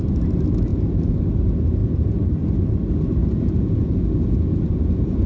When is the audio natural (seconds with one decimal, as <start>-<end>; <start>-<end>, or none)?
0.0-0.7; 1.2-3.2